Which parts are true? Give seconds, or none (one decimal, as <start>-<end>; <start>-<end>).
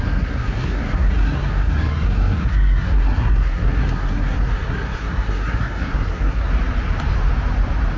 6.5-8.0